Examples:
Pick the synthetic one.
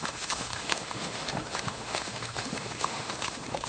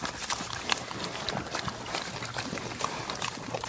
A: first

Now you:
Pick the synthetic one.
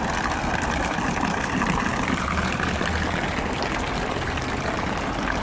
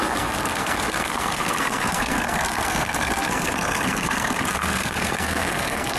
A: second